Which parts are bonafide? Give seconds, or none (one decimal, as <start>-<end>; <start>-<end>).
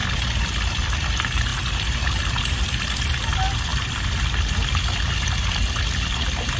0.0-6.6